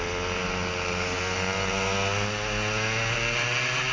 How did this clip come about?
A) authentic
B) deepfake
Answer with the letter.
A